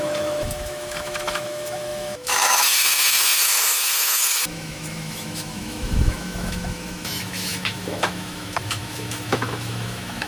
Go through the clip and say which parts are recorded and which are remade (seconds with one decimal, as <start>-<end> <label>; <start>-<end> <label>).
0.0-10.3 remade